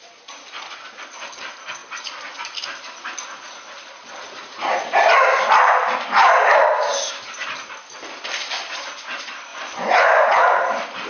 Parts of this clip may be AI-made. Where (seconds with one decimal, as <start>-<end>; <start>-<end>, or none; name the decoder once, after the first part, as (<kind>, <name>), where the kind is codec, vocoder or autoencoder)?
9.5-10.6 (vocoder, Vocos)